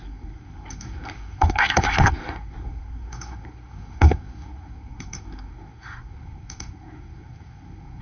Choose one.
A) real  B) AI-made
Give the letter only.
B